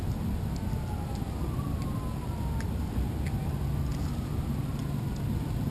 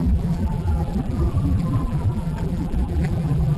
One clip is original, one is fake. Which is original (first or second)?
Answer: first